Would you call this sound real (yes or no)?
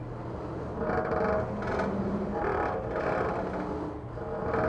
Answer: yes